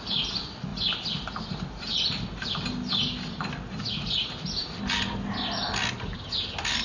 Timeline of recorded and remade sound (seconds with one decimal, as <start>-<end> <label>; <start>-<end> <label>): 0.0-6.8 recorded